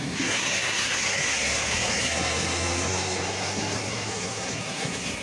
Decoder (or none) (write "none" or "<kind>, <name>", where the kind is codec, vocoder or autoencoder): codec, SNAC